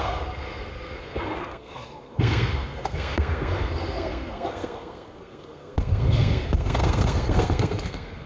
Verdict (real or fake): fake